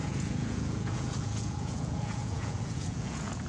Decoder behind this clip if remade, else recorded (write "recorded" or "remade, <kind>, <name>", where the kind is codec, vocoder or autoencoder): remade, vocoder, Vocos